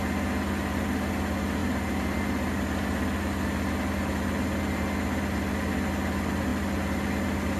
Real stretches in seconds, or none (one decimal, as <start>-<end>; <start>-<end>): 0.0-7.6